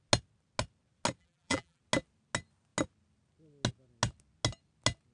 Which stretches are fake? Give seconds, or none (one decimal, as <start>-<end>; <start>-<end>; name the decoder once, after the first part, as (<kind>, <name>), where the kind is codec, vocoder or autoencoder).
1.2-1.8 (vocoder, BigVGAN v2)